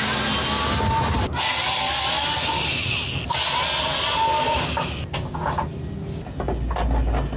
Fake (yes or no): no